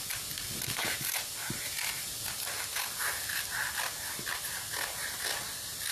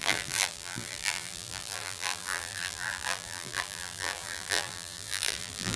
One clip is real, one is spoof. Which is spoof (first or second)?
second